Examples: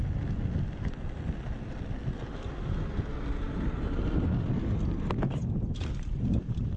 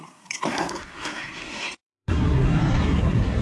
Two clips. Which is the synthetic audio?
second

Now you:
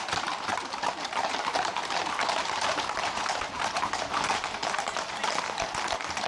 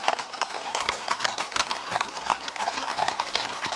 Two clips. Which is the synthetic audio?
second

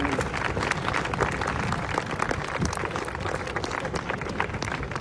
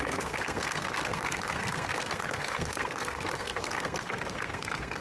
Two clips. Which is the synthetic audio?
second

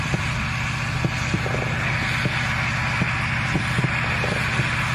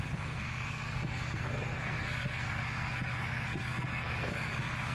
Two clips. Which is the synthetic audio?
second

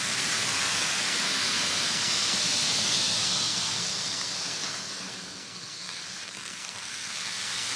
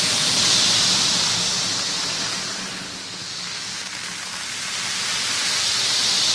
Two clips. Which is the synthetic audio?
first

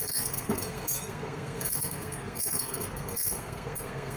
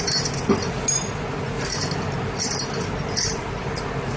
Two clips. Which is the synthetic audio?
first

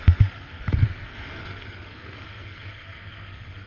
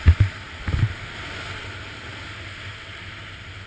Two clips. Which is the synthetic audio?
first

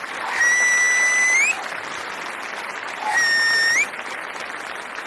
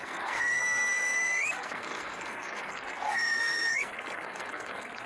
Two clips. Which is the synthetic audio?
second